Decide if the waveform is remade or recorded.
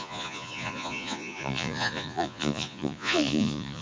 remade